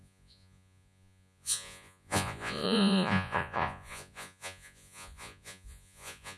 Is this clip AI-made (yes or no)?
yes